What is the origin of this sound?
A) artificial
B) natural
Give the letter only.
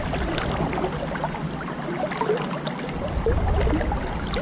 B